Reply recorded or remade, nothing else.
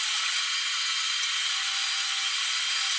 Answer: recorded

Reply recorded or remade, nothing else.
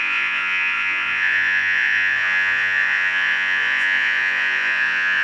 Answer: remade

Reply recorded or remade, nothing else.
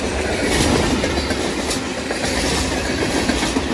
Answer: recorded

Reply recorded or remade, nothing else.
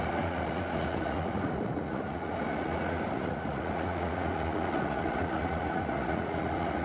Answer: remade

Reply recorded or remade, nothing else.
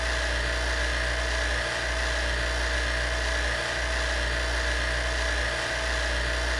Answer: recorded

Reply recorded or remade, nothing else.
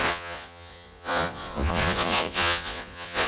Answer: remade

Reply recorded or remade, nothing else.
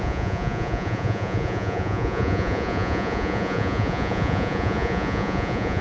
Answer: remade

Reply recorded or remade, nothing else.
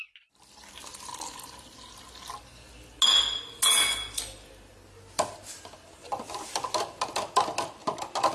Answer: recorded